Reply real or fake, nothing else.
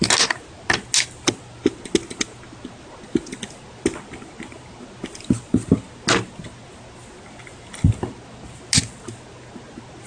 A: real